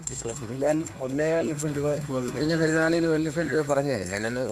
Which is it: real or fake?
fake